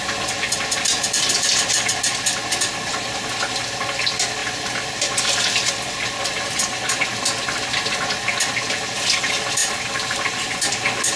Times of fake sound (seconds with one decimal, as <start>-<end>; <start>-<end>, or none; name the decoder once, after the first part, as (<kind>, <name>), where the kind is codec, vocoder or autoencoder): 9.6-10.7 (vocoder, BigVGAN v2)